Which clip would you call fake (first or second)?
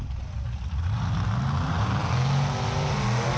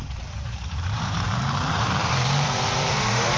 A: second